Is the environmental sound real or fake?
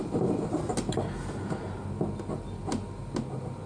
real